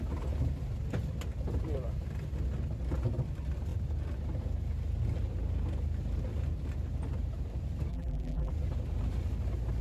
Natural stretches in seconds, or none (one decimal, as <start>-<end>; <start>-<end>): 0.0-7.9; 8.5-9.8

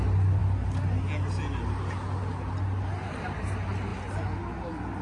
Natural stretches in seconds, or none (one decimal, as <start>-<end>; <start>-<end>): 0.0-5.0

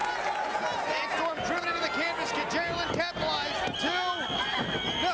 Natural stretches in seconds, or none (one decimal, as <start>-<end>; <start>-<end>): 0.0-5.1

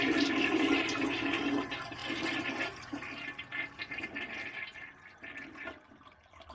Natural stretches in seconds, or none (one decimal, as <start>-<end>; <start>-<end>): 0.0-6.5

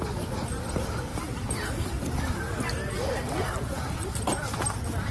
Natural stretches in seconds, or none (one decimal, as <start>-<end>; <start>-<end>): 0.0-5.1

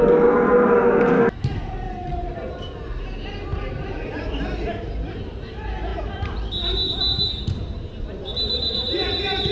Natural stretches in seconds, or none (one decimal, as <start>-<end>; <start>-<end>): 0.0-3.5; 4.9-5.9; 6.5-9.5

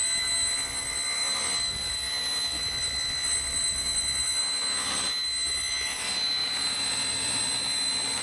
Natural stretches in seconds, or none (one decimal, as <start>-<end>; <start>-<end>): 0.0-1.2; 4.4-6.4; 7.1-8.2